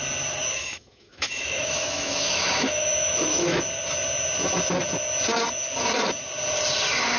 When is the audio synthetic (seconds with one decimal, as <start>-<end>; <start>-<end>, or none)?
0.5-3.6